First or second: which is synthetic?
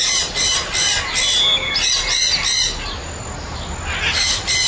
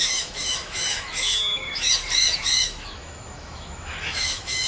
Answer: second